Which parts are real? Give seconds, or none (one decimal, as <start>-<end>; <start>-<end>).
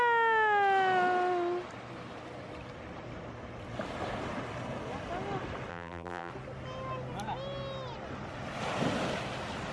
0.0-5.7; 6.3-9.7